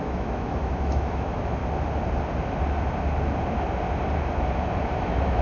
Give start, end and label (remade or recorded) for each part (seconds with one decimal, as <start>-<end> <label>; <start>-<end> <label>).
0.0-1.6 remade; 1.6-4.8 recorded; 4.8-5.4 remade